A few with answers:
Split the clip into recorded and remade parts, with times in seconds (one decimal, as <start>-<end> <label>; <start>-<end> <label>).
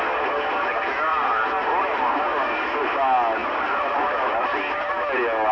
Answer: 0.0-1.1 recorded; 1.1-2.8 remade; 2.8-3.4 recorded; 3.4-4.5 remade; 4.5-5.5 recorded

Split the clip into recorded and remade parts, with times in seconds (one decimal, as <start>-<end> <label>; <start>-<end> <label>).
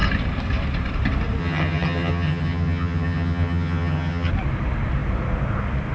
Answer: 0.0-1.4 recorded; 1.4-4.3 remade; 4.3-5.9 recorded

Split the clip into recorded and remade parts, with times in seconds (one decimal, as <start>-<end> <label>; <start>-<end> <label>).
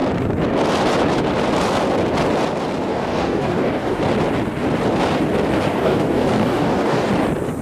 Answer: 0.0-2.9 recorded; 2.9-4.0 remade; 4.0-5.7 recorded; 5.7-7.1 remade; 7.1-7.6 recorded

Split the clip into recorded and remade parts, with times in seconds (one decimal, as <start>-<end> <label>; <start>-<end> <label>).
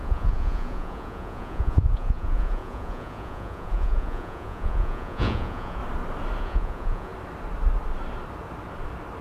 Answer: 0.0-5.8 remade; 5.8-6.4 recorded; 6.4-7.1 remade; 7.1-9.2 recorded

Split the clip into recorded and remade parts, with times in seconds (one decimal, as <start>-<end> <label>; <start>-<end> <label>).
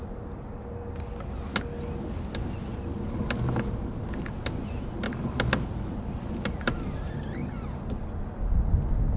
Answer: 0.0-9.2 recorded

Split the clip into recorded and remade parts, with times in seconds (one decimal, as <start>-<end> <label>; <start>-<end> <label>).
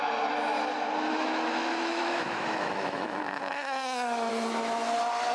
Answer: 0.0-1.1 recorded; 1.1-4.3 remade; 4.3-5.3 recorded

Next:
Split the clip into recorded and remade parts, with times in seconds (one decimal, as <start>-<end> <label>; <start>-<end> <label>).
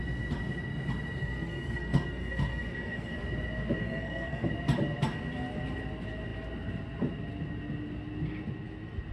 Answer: 0.0-1.2 recorded; 1.2-3.2 remade; 3.2-3.8 recorded; 3.8-4.5 remade; 4.5-9.1 recorded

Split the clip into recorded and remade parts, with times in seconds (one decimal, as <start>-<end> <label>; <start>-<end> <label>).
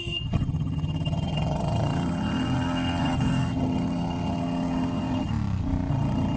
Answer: 0.0-5.3 remade; 5.3-5.9 recorded; 5.9-6.4 remade